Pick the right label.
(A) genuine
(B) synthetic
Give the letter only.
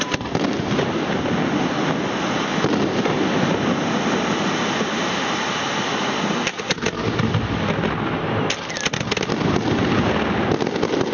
A